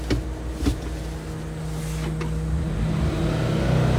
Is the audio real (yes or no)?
yes